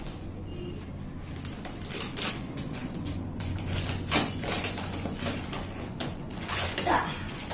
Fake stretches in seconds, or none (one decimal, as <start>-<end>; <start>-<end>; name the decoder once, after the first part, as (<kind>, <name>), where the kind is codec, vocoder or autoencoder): 0.0-0.5 (vocoder, Vocos); 2.3-7.5